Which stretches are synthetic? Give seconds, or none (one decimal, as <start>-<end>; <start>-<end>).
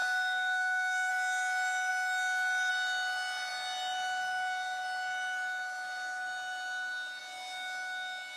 0.0-1.1